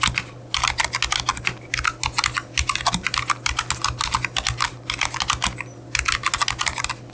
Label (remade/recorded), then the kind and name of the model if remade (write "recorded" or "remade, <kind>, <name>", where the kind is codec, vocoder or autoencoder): recorded